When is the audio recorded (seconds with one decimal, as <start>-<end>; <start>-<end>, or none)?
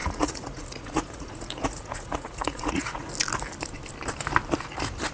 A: 3.1-5.1